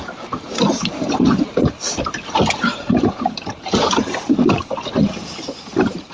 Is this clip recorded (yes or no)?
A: yes